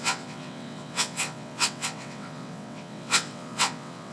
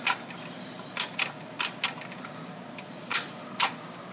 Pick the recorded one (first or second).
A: second